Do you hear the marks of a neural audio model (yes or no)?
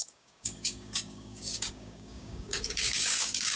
yes